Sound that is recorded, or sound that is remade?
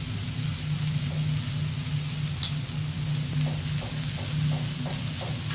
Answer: recorded